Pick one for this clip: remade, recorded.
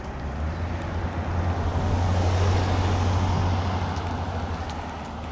recorded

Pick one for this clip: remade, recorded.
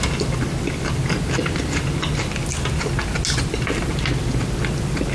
recorded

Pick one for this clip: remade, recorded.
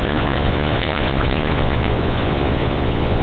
remade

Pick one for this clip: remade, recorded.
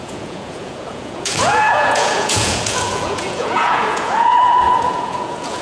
remade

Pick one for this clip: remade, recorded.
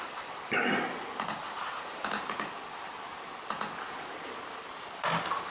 recorded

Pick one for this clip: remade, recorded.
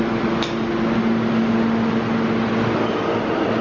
recorded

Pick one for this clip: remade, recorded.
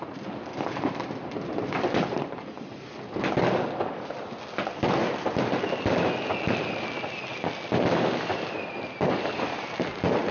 recorded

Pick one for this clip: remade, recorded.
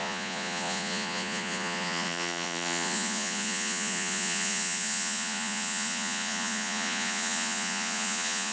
remade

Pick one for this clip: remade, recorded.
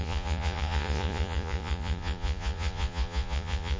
remade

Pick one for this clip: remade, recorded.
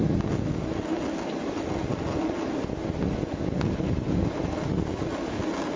recorded